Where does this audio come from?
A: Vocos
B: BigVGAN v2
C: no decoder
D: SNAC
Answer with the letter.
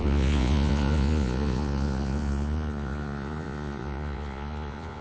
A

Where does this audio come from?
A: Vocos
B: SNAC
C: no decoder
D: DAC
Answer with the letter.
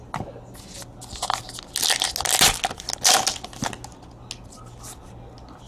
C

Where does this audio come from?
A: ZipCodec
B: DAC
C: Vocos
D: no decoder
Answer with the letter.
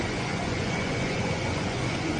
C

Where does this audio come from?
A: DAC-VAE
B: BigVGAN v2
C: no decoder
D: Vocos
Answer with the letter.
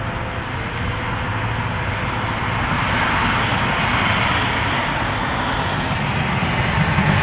C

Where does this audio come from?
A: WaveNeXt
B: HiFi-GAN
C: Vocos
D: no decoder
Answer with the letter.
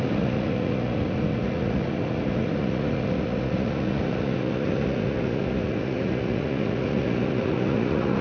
C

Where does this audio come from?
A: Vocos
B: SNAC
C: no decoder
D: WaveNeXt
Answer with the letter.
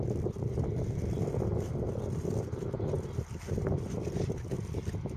C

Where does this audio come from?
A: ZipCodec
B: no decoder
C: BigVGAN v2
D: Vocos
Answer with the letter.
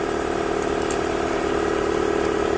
B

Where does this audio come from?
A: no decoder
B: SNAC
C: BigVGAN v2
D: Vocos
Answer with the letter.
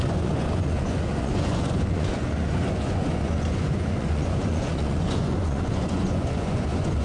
D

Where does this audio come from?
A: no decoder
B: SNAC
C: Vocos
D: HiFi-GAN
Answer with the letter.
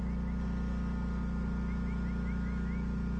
A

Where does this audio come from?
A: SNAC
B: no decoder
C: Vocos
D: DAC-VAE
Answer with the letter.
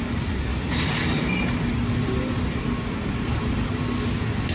B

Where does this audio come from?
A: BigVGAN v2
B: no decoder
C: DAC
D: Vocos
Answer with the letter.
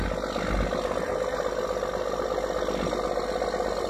B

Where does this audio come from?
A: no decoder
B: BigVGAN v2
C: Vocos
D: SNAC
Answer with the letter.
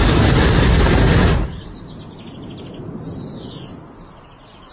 A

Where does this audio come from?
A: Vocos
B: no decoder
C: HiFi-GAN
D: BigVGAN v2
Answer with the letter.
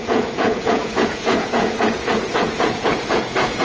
A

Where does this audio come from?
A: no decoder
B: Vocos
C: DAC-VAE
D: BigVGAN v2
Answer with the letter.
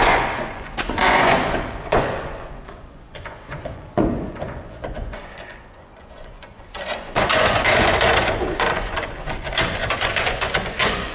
B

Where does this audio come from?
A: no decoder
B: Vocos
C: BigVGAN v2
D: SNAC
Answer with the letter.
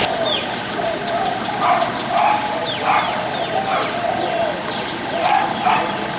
A